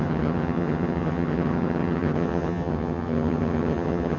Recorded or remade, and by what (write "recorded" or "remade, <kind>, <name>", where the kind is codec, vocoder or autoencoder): remade, vocoder, HiFi-GAN